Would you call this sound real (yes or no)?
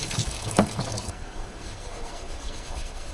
no